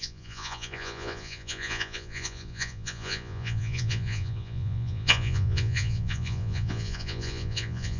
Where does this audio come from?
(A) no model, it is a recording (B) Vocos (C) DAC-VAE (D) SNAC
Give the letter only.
B